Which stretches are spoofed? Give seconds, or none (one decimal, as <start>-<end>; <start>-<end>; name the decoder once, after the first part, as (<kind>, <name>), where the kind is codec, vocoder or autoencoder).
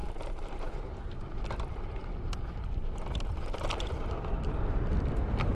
0.0-1.5 (vocoder, BigVGAN v2); 2.0-4.1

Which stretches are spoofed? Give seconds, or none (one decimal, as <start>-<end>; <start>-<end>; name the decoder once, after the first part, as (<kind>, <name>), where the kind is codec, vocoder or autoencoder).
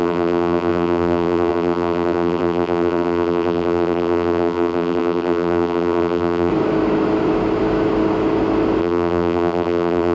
0.0-6.5 (vocoder, BigVGAN v2); 8.8-10.1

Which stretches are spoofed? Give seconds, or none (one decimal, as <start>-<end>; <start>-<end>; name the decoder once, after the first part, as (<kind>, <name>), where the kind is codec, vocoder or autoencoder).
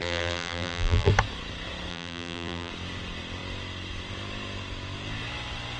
0.0-1.1 (vocoder, BigVGAN v2); 1.9-2.7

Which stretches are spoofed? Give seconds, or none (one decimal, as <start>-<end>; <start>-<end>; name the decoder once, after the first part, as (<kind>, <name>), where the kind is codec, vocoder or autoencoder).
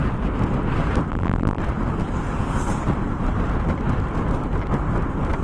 1.1-1.6 (vocoder, BigVGAN v2)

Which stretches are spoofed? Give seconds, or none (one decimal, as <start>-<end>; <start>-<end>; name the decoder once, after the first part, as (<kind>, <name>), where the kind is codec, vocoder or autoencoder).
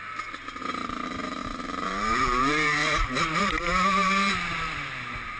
0.0-2.8 (vocoder, BigVGAN v2); 3.4-5.4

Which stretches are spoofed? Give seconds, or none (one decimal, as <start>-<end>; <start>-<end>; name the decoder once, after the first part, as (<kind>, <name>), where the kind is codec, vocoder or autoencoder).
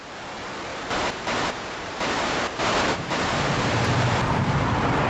0.7-3.8 (vocoder, BigVGAN v2)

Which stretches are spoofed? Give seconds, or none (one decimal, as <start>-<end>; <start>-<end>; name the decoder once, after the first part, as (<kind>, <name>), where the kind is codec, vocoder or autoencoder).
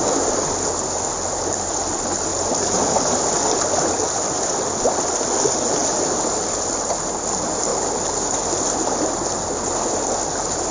2.3-3.4 (vocoder, BigVGAN v2); 4.0-4.6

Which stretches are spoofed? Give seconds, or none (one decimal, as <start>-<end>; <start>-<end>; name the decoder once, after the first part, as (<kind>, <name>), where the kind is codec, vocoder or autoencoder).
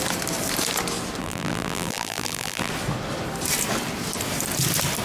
1.2-2.7 (vocoder, BigVGAN v2)